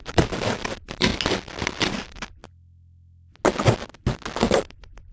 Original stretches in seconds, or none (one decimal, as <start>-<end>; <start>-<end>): 1.1-1.8; 2.4-4.5